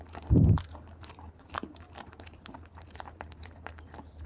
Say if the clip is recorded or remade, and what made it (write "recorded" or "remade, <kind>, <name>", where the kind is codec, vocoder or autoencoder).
remade, vocoder, BigVGAN v2